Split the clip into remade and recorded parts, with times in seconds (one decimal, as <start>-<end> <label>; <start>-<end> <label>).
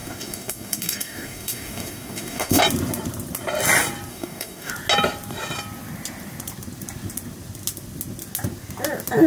0.0-2.6 remade; 2.6-4.1 recorded; 4.1-4.7 remade; 4.7-9.3 recorded